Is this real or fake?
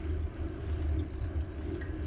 real